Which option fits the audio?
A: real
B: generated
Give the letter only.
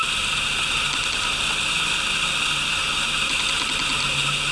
A